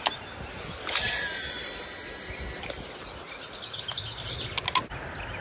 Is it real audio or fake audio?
real